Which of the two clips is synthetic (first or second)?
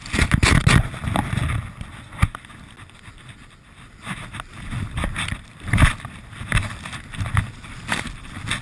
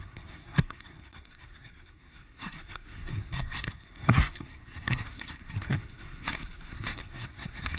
second